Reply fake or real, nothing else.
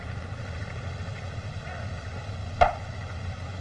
real